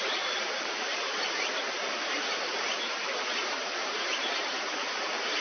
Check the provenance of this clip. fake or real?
fake